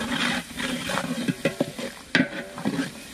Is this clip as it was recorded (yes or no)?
no